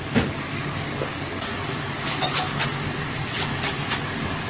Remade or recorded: remade